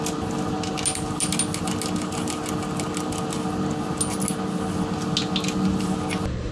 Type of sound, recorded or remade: recorded